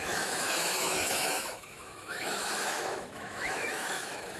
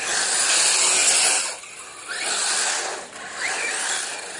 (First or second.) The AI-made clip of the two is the first